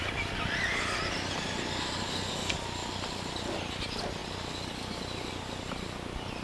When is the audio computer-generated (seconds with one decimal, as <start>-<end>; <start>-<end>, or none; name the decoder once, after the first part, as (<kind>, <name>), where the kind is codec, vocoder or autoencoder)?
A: none